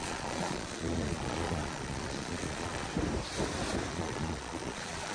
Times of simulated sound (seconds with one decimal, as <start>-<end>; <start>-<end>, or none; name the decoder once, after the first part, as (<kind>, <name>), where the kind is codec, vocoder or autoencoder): 0.0-2.9 (vocoder, Vocos); 3.9-5.1